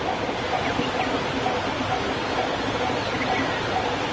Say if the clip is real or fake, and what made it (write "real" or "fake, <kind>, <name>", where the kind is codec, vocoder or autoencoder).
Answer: real